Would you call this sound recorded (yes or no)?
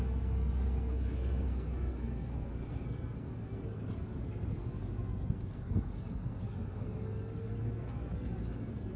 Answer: no